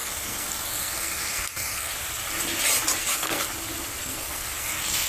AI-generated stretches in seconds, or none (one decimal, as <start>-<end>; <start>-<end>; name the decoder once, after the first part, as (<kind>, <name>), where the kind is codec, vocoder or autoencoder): 0.0-1.9 (codec, SNAC); 3.0-3.5; 4.0-5.1